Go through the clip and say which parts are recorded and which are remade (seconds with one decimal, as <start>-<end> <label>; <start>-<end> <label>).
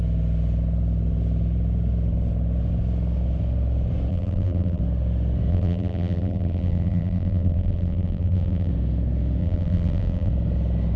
0.0-4.1 recorded; 4.1-4.8 remade; 4.8-5.5 recorded; 5.5-8.7 remade; 8.7-9.4 recorded; 9.4-10.3 remade; 10.3-11.0 recorded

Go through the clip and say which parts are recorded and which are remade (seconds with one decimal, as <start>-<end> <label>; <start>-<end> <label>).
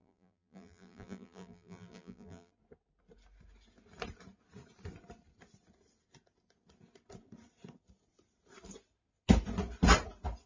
0.0-2.5 remade; 2.5-10.5 recorded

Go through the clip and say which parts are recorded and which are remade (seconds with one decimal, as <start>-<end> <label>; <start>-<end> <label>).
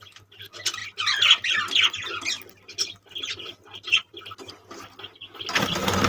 0.0-6.1 recorded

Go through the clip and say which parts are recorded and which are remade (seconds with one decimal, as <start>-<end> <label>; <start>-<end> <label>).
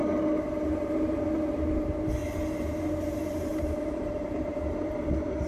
0.0-1.2 remade; 1.2-2.2 recorded; 2.2-5.5 remade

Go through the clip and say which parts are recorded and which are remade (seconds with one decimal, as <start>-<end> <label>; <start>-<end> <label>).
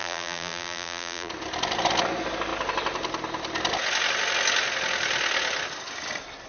0.0-1.3 remade; 1.3-6.5 recorded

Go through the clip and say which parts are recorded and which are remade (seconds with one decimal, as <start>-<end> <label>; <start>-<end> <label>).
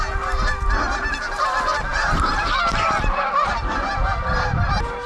0.0-5.1 recorded